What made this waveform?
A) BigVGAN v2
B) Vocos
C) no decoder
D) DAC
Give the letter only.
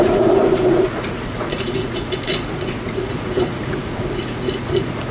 B